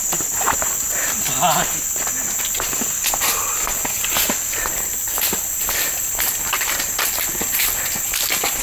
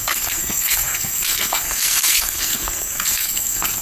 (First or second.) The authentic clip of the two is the first